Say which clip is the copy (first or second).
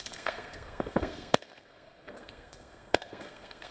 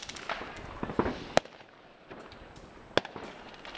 first